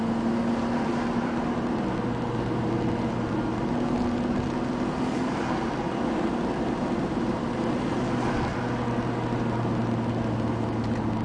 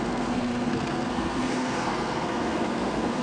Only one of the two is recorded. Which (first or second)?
first